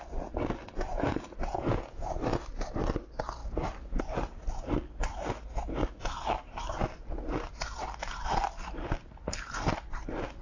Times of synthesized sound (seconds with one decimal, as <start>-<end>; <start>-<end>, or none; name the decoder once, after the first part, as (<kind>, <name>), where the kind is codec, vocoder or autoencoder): 0.9-2.2 (vocoder, Vocos)